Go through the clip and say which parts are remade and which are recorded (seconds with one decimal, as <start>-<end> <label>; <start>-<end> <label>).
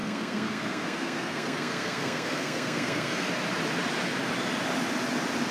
0.0-3.3 remade; 3.3-5.5 recorded